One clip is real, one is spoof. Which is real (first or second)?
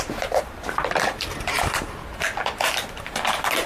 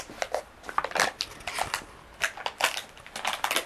second